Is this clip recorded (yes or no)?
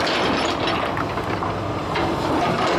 yes